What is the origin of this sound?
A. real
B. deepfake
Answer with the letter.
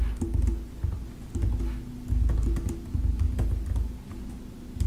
A